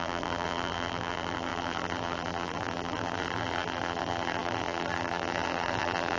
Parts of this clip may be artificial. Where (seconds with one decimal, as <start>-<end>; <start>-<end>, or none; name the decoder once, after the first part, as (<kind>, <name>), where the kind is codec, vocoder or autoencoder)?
0.0-6.2 (vocoder, BigVGAN v2)